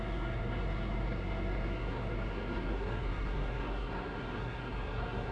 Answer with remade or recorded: remade